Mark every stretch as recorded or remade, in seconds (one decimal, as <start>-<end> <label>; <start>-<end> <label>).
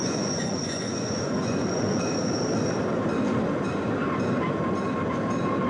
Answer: 0.0-2.0 remade; 2.0-5.7 recorded